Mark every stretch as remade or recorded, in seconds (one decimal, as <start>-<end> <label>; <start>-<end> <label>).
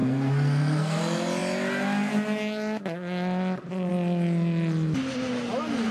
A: 0.0-1.0 remade; 1.0-5.9 recorded